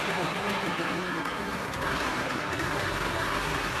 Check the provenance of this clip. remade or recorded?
remade